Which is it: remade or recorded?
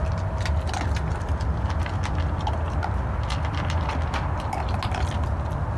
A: recorded